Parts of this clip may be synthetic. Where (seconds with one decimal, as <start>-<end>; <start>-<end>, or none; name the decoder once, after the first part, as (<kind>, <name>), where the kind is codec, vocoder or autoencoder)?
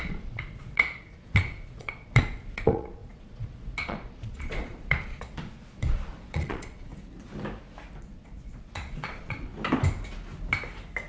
0.0-6.9 (vocoder, Vocos); 8.0-9.5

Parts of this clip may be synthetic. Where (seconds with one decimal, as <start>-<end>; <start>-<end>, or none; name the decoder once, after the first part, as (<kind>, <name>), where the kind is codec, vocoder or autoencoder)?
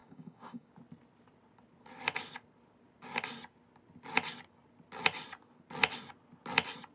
0.0-0.7 (codec, DAC)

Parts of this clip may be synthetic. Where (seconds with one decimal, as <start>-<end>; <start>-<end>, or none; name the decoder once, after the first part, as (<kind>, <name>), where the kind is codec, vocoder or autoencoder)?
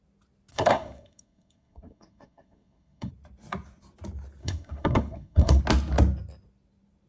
0.5-3.1 (codec, SNAC); 4.4-5.6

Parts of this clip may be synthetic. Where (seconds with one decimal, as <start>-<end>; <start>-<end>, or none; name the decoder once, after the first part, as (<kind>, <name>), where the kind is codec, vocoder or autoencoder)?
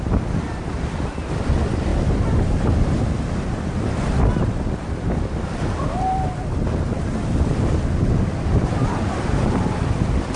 none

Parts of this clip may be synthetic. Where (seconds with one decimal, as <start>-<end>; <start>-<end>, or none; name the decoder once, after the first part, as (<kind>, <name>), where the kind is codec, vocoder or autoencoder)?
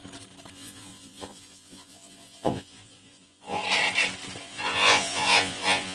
0.5-3.6 (vocoder, Vocos); 4.4-5.9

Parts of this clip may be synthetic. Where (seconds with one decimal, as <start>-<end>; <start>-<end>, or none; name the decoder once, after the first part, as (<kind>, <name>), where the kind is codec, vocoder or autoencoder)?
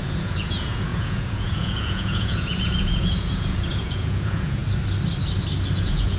0.0-4.6 (vocoder, Vocos); 5.8-6.2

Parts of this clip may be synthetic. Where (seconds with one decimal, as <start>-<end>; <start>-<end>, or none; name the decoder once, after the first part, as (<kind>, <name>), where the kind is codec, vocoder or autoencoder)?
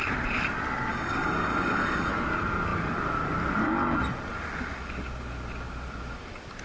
0.9-2.1 (codec, DAC)